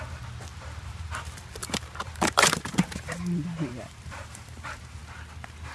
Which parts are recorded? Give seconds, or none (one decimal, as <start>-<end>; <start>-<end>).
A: 0.0-0.5; 1.1-1.6; 5.0-5.7